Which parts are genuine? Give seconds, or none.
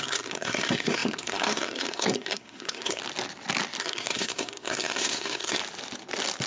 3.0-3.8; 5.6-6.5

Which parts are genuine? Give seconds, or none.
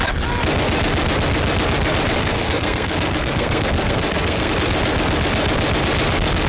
0.0-2.2; 4.5-6.5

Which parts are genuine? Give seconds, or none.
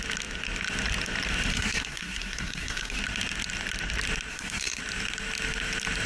0.0-1.5; 3.0-4.3; 4.8-6.1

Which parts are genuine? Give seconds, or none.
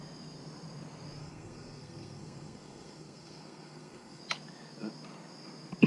0.0-1.2; 4.2-5.9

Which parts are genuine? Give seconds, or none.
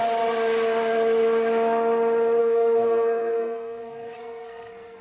0.0-2.4